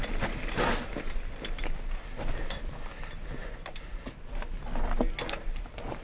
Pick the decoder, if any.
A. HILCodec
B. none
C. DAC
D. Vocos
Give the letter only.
B